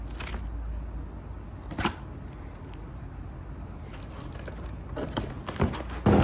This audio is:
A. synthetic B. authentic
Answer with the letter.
B